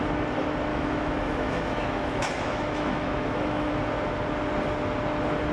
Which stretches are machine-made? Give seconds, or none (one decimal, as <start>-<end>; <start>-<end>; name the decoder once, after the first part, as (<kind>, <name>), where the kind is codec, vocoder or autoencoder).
0.7-3.7 (autoencoder, DAC-VAE)

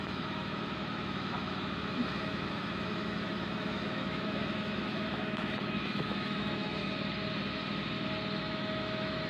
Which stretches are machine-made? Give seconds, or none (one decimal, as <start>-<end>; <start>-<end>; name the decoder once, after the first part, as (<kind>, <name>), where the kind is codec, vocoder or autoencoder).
0.0-6.8 (autoencoder, DAC-VAE); 8.4-9.3

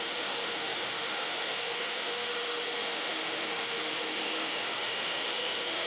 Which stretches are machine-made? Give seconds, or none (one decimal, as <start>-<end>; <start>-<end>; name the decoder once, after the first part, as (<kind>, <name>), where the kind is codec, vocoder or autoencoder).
0.0-5.9 (autoencoder, DAC-VAE)

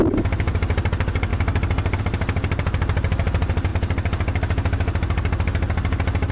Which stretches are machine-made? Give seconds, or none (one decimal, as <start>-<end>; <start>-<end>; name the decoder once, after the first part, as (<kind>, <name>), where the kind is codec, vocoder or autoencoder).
none

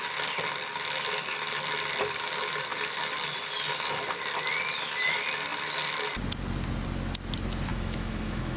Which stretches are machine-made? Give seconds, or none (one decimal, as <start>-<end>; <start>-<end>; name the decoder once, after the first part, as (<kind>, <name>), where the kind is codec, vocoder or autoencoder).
7.7-8.6 (autoencoder, DAC-VAE)

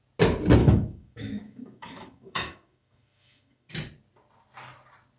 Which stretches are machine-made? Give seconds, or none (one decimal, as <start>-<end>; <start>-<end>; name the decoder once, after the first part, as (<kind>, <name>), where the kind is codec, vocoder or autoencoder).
0.6-3.7 (autoencoder, DAC-VAE)

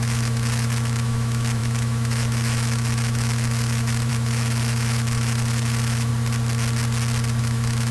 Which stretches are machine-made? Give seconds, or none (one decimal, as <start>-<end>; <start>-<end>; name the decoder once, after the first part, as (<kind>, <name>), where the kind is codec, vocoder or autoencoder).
0.0-6.1 (autoencoder, DAC-VAE); 7.4-7.9